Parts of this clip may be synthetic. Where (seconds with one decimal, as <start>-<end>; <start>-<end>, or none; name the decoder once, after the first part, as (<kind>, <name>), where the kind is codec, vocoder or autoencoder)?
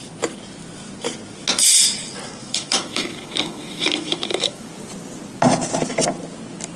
2.4-4.7 (autoencoder, DAC-VAE)